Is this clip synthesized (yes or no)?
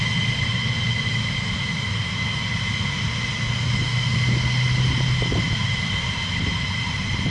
no